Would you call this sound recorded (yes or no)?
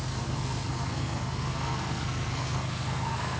no